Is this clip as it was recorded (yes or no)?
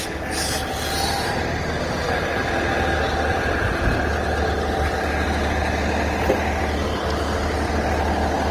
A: yes